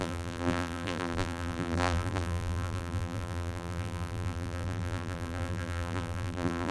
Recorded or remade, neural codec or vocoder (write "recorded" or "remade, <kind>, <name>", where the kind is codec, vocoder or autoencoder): remade, vocoder, BigVGAN v2